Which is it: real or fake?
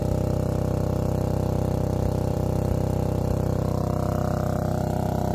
fake